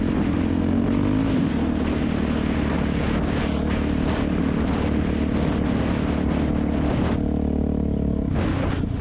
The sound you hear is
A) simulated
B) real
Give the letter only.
B